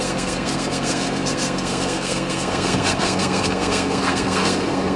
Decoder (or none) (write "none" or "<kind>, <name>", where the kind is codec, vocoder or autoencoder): codec, SNAC